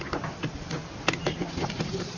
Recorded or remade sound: recorded